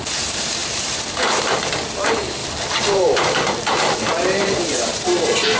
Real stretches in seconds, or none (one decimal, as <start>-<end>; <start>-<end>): 2.4-2.9

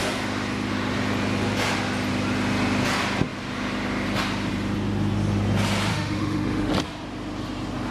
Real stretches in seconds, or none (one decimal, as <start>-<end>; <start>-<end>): 0.0-5.9; 6.7-7.9

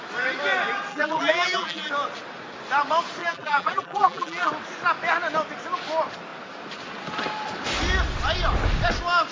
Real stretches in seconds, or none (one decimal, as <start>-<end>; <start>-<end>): 0.0-0.9; 1.9-3.2; 4.5-9.3

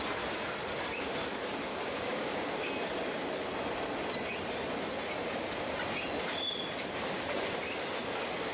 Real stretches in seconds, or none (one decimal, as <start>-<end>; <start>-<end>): 0.0-1.7; 2.6-8.5

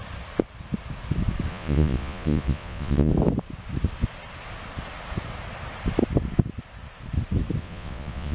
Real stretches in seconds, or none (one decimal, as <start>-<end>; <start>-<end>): 0.0-1.5; 3.1-7.6